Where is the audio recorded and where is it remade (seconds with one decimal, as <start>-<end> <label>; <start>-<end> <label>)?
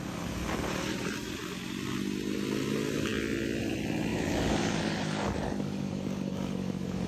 0.0-4.1 recorded; 4.1-7.1 remade